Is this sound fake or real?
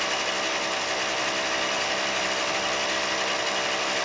real